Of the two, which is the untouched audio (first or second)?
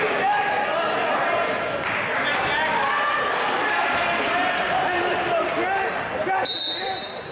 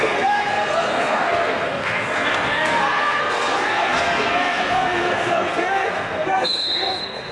first